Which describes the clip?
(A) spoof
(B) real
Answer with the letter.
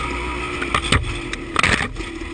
B